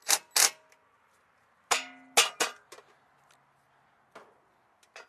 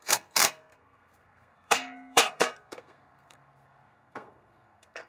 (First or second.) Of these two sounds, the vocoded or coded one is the second